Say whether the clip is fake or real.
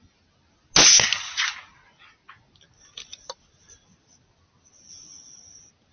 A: real